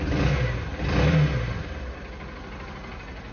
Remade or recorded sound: recorded